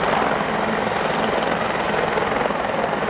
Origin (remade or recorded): recorded